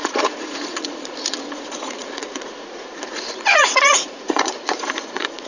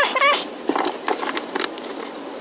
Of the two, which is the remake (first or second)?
first